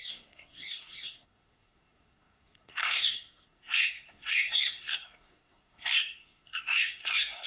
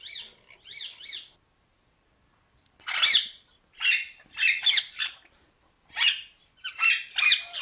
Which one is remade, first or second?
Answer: first